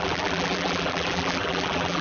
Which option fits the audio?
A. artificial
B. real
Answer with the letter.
A